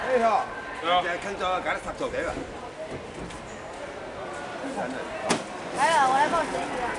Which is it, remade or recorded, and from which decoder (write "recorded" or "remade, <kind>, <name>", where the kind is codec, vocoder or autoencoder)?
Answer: recorded